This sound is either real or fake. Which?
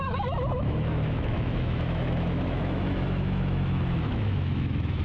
fake